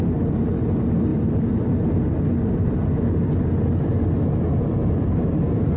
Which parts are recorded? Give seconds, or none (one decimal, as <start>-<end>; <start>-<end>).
0.0-5.8